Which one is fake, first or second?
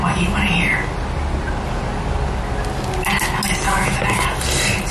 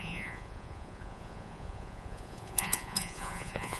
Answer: second